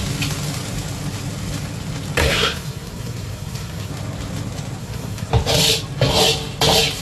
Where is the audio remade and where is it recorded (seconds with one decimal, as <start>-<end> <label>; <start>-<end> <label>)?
0.0-2.2 recorded; 2.2-3.9 remade; 3.9-4.8 recorded; 4.8-5.3 remade; 5.3-7.0 recorded